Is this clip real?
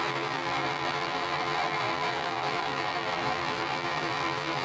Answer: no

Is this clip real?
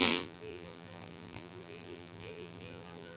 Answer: no